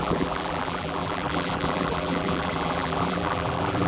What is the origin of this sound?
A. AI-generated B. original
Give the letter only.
A